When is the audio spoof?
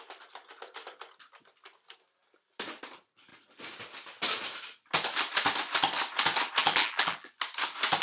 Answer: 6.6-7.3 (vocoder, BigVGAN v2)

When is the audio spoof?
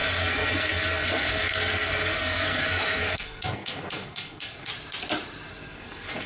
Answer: 0.0-4.7 (codec, SNAC); 5.5-6.3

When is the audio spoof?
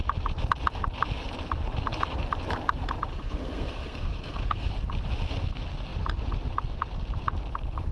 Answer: 3.1-4.7 (codec, SNAC)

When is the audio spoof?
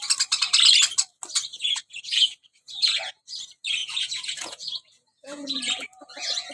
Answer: 1.5-3.1 (vocoder, Vocos); 3.8-6.5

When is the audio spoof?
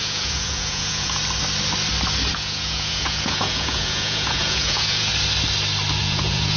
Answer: 0.0-1.2 (vocoder, Vocos); 2.3-5.1; 6.0-6.6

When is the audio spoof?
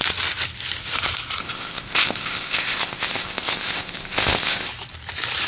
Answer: 1.4-4.7 (codec, ZipCodec)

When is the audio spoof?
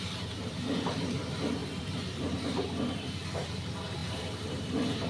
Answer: 0.0-5.1 (vocoder, BigVGAN v2)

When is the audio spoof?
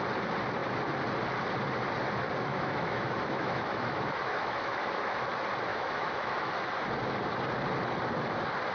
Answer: 2.5-5.3 (autoencoder, DAC-VAE); 5.7-6.5